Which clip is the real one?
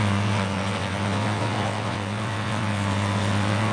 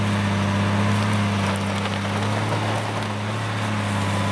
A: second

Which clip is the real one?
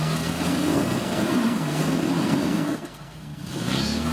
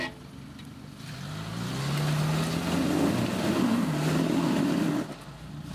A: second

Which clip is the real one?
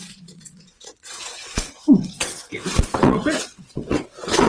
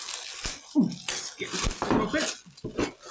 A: second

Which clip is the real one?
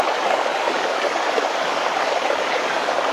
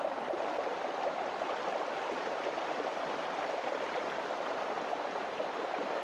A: second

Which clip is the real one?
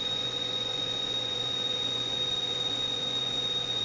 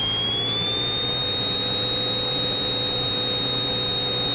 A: second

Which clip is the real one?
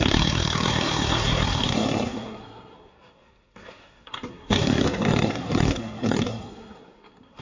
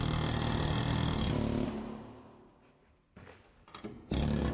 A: second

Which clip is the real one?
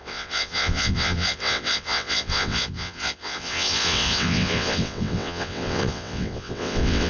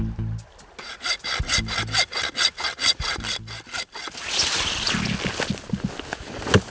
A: second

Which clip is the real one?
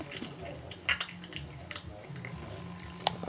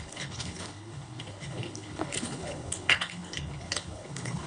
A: first